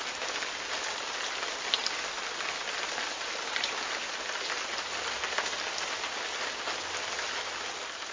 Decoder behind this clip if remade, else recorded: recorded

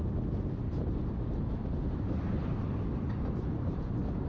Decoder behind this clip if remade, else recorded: recorded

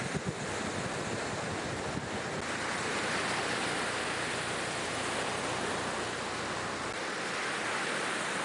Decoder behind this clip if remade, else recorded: recorded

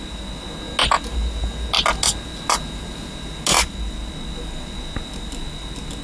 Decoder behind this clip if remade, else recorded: recorded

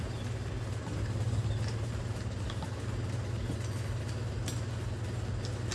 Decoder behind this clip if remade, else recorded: recorded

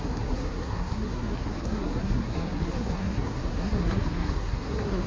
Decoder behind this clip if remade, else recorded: remade, codec, SNAC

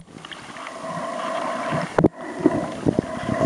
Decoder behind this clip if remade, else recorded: recorded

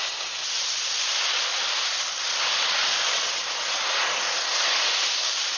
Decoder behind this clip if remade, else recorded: recorded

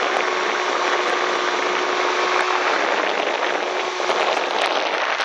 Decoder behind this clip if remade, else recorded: recorded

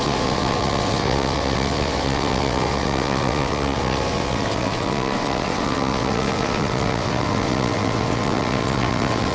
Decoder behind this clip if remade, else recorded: remade, vocoder, WaveNeXt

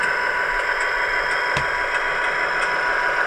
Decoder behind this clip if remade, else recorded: recorded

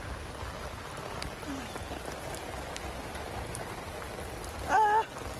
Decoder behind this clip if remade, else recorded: recorded